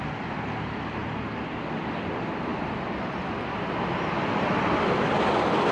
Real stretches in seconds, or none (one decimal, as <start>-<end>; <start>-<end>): 0.0-5.7